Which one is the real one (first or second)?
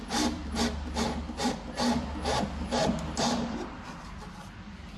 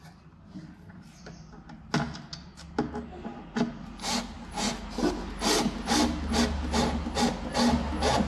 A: second